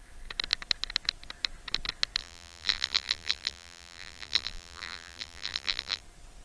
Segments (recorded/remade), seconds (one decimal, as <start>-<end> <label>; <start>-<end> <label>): 0.0-2.2 recorded; 2.2-6.0 remade; 6.0-6.4 recorded